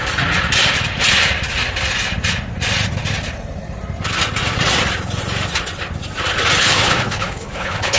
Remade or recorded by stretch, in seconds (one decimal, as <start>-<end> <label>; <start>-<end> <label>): 0.0-6.6 recorded; 6.6-8.0 remade